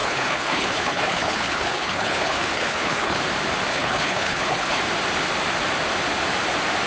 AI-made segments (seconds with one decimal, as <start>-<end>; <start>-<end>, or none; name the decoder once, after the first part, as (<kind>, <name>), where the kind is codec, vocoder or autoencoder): 0.0-3.2 (codec, HILCodec); 3.7-4.8